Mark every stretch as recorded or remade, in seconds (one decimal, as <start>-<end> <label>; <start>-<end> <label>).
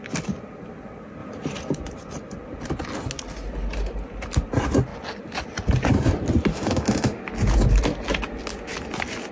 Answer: 0.0-6.5 recorded; 6.5-7.2 remade; 7.2-9.3 recorded